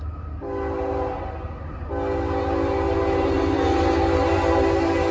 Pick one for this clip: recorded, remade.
recorded